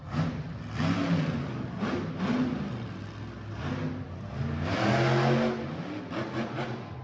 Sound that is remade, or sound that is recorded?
recorded